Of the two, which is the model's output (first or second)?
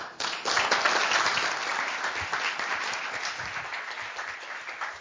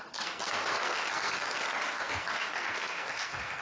second